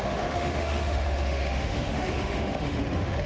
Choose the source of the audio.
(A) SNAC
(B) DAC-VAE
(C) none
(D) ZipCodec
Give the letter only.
B